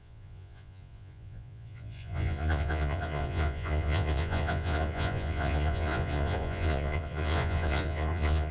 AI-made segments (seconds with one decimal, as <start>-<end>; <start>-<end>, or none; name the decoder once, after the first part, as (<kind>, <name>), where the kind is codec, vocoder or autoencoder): 0.0-8.5 (vocoder, Vocos)